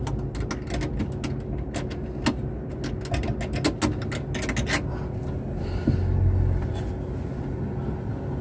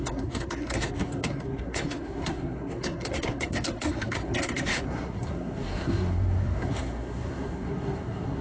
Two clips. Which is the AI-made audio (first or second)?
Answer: second